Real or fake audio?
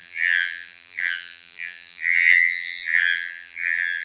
fake